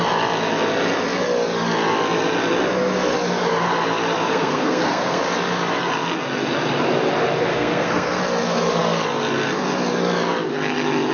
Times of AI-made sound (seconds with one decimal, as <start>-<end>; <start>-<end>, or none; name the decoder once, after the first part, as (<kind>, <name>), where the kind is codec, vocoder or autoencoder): 4.3-5.2 (codec, SNAC); 7.5-8.2